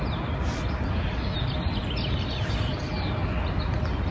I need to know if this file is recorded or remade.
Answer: recorded